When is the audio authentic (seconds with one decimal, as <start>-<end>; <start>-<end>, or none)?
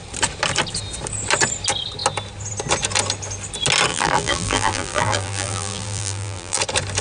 0.0-3.9; 6.6-7.0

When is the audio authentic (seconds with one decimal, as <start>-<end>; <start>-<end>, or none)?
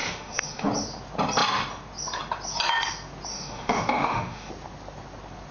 0.7-3.3; 4.5-5.5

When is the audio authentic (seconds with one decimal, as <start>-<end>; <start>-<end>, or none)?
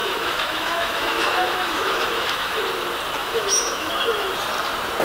2.6-3.2; 4.3-5.0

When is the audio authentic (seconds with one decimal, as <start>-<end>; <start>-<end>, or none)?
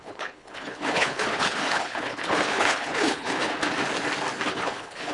3.5-4.5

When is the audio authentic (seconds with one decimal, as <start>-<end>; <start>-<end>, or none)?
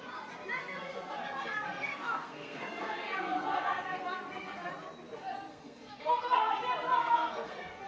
0.0-0.6; 4.7-5.5; 6.5-7.0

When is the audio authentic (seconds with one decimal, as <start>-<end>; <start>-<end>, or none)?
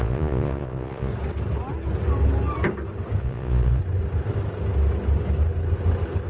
1.1-3.2; 3.8-6.3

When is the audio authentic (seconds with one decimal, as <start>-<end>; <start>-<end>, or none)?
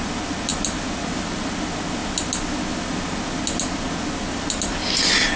0.0-5.4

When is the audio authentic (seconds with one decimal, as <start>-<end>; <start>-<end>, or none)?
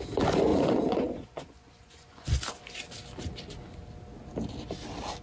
0.0-0.5; 2.4-5.2